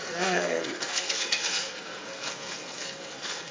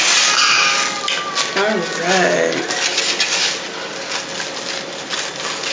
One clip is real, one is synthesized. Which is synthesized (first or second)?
first